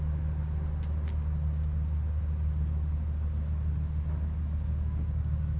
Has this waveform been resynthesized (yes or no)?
no